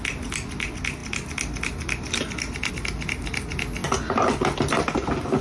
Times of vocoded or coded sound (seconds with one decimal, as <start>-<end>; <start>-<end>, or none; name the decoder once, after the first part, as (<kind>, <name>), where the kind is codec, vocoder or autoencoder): none